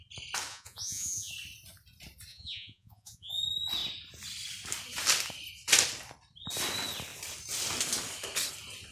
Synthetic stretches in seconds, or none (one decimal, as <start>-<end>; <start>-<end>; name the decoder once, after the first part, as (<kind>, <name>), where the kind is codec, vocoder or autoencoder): 0.5-1.3 (vocoder, Vocos); 2.3-3.3

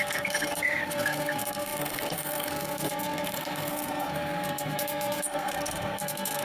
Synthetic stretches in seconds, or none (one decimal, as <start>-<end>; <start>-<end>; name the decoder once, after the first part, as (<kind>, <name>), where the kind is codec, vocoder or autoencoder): 0.0-6.4 (codec, SNAC)

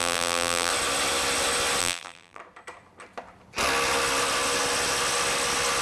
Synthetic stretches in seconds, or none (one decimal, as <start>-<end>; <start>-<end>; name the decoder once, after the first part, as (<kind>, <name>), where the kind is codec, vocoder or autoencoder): 0.0-0.7 (vocoder, BigVGAN v2); 1.8-2.4

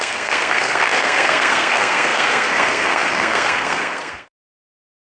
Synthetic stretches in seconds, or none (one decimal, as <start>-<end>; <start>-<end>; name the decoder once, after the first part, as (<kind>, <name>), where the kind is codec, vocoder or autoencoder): 0.0-5.2 (codec, SNAC)

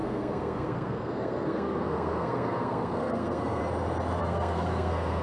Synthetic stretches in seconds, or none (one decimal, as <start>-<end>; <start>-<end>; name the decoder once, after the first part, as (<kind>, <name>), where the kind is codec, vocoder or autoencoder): 0.0-3.6 (codec, SNAC); 4.2-5.2

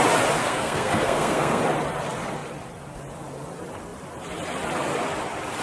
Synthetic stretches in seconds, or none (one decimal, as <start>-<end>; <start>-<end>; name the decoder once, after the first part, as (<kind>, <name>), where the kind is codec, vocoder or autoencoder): 0.4-1.6 (codec, SNAC)

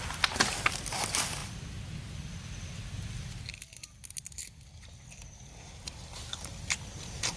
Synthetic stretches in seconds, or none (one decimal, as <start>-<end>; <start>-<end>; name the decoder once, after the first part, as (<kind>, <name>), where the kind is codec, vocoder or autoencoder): none